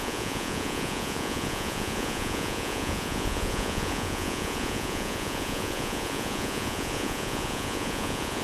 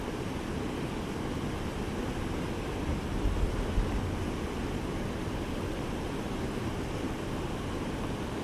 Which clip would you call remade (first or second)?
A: first